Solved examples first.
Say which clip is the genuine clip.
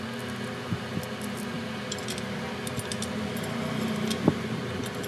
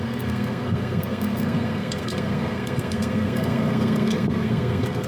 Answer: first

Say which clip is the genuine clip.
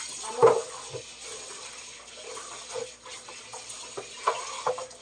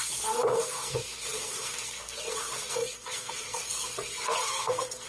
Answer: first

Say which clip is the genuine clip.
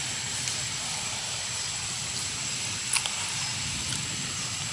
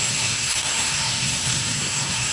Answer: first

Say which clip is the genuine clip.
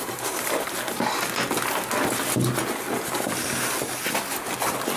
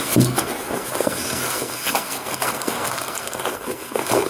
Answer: first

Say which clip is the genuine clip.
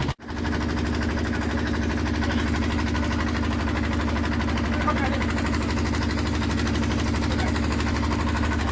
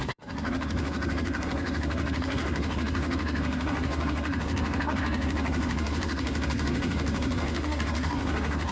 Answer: first